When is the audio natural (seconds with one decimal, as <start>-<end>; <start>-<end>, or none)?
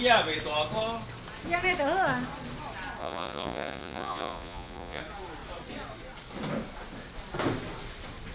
0.0-3.0; 5.0-8.3